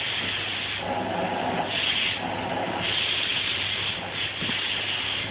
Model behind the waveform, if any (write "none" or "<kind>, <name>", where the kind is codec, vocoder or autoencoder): none